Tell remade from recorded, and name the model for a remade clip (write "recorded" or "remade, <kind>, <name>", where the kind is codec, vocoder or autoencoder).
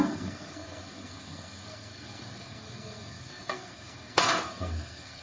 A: remade, codec, SNAC